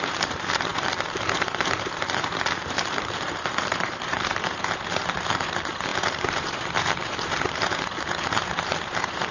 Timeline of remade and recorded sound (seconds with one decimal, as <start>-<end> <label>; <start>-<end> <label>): 0.0-9.3 remade